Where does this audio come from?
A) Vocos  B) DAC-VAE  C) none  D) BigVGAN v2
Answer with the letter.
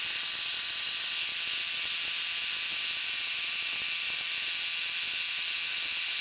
C